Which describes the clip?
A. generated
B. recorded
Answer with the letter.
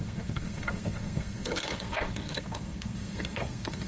A